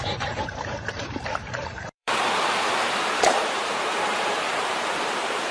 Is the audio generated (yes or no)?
yes